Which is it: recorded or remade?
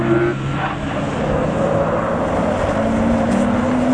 recorded